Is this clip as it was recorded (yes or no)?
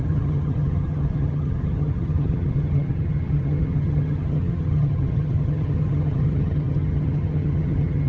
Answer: no